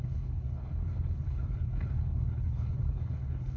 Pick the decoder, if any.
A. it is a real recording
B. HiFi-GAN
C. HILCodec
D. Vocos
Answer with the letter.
C